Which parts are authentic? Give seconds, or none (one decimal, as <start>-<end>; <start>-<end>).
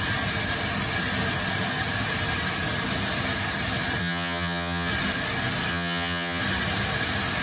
0.0-4.0; 4.9-5.7; 6.4-7.4